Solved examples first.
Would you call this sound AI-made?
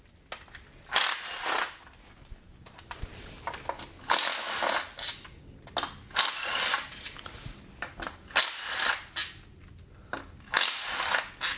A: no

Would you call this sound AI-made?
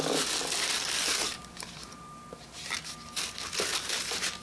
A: no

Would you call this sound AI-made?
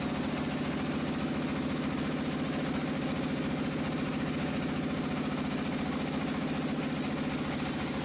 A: no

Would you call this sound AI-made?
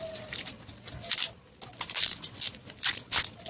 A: no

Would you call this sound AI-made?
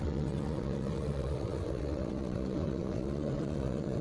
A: yes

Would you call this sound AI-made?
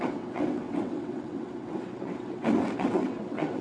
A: yes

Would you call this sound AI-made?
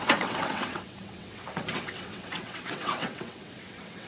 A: yes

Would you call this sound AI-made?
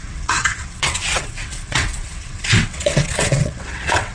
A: yes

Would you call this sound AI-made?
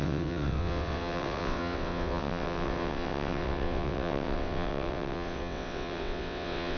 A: yes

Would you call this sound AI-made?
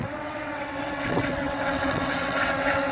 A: yes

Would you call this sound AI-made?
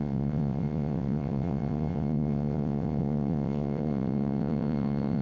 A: yes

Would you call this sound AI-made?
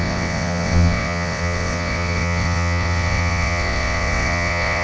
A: yes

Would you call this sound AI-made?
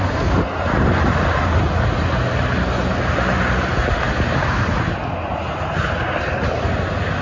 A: no